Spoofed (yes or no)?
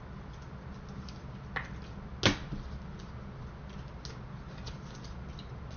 no